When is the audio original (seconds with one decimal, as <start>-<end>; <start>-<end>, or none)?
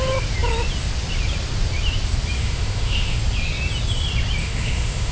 0.0-2.4; 3.2-4.4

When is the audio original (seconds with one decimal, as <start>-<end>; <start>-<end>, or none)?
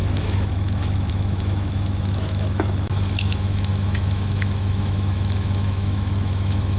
none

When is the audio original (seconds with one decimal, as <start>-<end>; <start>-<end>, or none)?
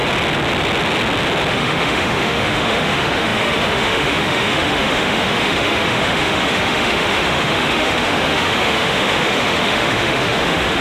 0.0-1.5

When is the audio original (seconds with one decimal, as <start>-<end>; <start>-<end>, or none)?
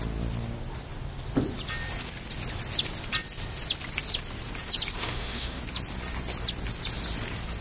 0.0-5.0; 5.6-7.6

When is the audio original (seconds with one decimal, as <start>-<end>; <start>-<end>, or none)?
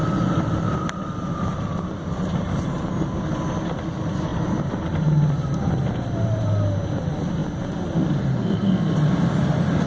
0.0-9.9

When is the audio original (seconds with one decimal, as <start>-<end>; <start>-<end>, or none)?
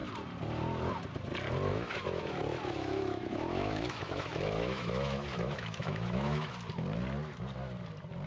0.0-1.7; 6.5-8.3